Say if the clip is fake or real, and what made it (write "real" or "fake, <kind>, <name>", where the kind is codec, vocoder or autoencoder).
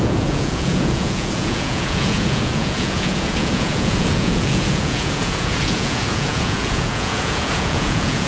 fake, vocoder, Vocos